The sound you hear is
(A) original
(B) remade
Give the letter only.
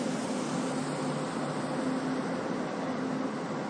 A